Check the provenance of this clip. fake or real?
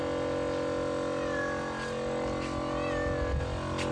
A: real